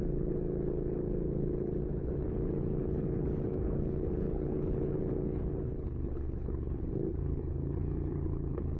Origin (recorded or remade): remade